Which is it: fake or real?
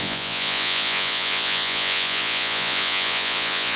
fake